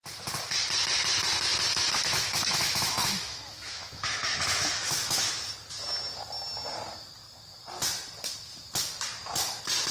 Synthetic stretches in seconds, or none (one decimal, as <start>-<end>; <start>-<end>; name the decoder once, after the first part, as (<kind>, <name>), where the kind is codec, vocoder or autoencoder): 1.7-5.5 (autoencoder, DAC-VAE)